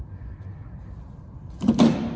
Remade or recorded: recorded